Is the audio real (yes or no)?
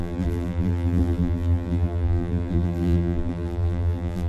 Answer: no